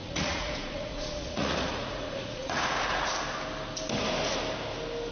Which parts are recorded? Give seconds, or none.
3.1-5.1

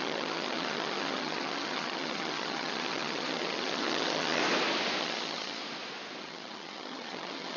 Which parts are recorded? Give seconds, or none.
4.4-5.0; 5.6-6.2

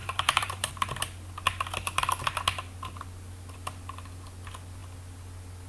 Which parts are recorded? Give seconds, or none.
0.7-5.7

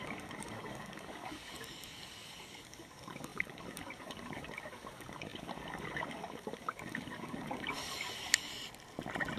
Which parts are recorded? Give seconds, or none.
8.5-9.4

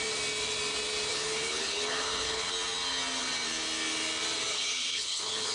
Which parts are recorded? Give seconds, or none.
0.0-1.1; 2.5-4.5